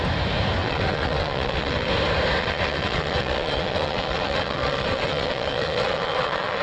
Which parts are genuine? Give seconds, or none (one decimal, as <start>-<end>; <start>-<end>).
0.0-0.6; 1.9-2.4